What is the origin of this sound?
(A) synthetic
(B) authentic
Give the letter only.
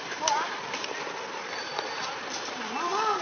B